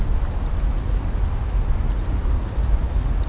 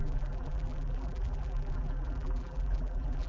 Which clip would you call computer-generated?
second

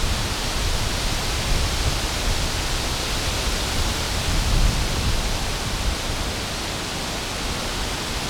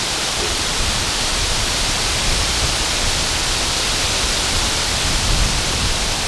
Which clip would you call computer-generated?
second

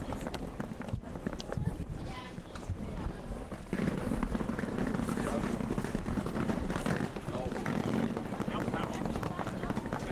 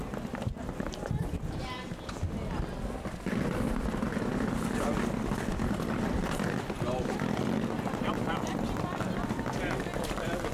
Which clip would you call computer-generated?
first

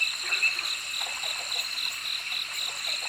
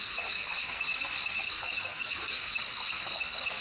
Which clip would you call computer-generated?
second